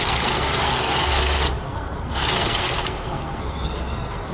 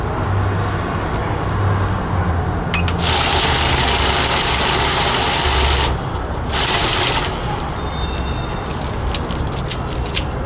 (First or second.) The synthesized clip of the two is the first